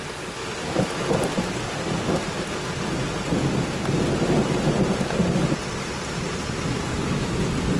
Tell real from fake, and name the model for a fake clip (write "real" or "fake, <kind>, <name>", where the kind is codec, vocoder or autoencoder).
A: real